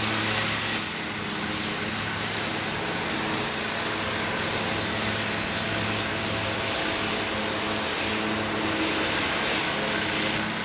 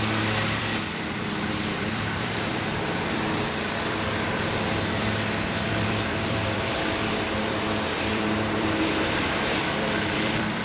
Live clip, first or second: first